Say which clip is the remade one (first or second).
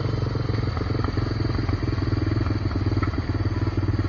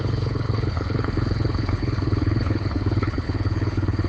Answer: second